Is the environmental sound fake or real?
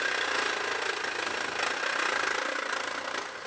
real